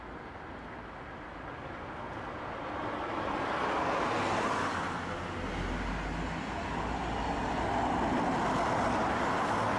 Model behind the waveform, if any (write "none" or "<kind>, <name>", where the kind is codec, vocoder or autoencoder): none